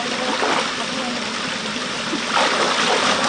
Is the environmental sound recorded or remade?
recorded